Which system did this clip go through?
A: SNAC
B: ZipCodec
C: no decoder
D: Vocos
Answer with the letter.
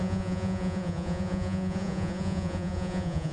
D